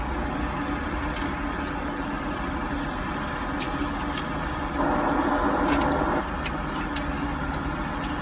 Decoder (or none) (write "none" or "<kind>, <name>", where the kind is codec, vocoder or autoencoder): none